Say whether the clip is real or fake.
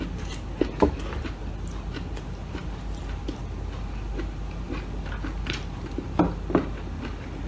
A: real